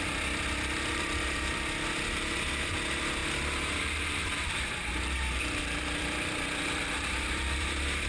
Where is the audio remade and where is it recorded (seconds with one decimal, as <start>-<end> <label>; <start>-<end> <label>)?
0.0-3.2 remade; 3.2-5.3 recorded; 5.3-8.1 remade